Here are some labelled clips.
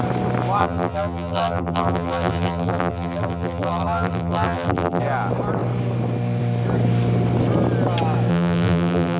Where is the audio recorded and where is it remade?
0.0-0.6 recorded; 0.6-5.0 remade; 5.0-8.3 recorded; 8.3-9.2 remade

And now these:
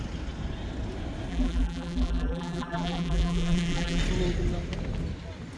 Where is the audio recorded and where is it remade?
0.0-1.3 recorded; 1.3-4.0 remade; 4.0-5.6 recorded

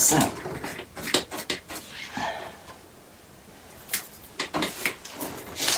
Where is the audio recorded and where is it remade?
0.0-3.1 recorded; 3.1-5.8 remade

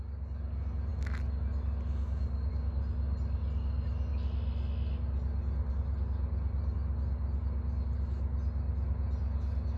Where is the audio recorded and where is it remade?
0.0-9.8 recorded

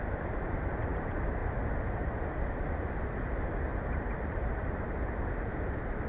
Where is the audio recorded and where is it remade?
0.0-3.7 recorded; 3.7-5.1 remade; 5.1-6.1 recorded

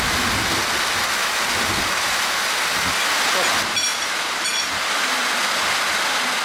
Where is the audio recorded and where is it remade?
0.0-3.9 recorded; 3.9-4.9 remade; 4.9-6.4 recorded

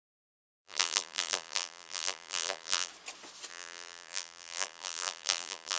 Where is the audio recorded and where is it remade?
0.0-2.9 remade; 2.9-3.5 recorded; 3.5-5.8 remade